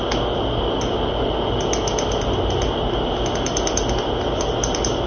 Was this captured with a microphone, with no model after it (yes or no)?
yes